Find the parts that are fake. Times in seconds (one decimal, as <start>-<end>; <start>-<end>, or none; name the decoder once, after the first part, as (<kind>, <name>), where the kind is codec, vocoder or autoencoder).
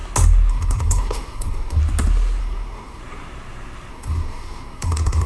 0.5-1.8 (codec, SNAC); 2.4-3.0; 3.9-5.3